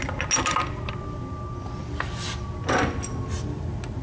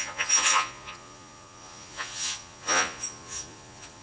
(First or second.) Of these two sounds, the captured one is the first